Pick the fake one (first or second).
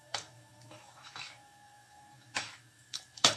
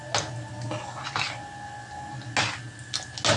first